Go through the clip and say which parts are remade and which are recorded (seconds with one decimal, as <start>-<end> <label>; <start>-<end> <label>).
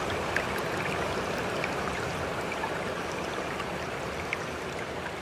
0.0-5.2 recorded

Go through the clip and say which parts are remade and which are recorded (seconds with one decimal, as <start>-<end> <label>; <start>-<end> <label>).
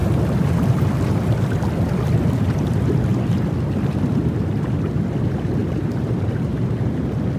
0.0-5.6 recorded; 5.6-6.6 remade; 6.6-7.4 recorded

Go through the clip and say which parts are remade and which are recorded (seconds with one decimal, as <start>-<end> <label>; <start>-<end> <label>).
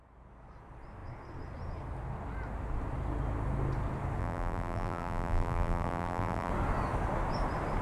0.0-4.2 recorded; 4.2-6.5 remade; 6.5-7.8 recorded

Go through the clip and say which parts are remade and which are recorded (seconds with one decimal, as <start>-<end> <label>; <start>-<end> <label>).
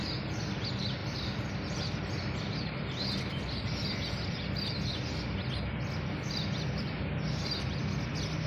0.0-8.5 recorded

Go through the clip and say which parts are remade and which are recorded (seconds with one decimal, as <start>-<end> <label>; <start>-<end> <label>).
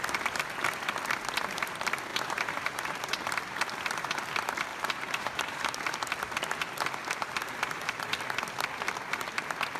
0.0-2.1 recorded; 2.1-2.9 remade; 2.9-4.7 recorded; 4.7-5.8 remade; 5.8-7.4 recorded; 7.4-8.0 remade; 8.0-9.8 recorded